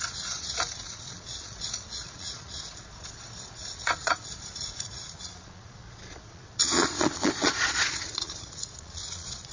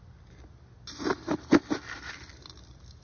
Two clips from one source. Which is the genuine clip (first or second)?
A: second